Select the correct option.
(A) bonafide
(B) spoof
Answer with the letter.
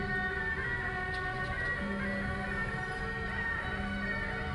A